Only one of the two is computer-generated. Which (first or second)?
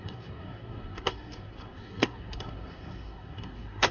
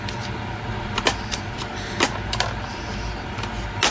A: first